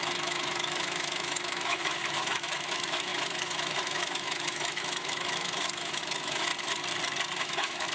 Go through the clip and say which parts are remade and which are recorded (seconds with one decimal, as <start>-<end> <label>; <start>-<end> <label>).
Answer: 0.0-6.5 remade; 6.5-7.4 recorded; 7.4-7.9 remade